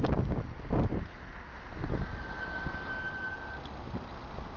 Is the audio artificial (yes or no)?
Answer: no